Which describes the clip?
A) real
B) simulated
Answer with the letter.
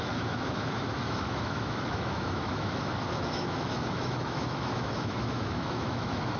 B